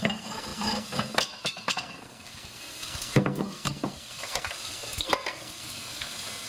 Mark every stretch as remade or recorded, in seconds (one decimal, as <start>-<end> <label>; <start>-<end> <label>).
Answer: 0.0-6.5 remade